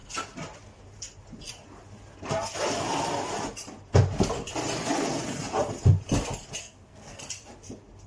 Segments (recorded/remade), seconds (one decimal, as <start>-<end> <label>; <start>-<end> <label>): 0.0-6.6 recorded; 6.6-7.2 remade; 7.2-8.1 recorded